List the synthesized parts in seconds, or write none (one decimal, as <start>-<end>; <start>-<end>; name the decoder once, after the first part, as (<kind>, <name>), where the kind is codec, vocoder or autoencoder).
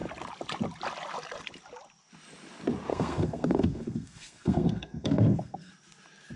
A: 2.9-5.7 (codec, SNAC)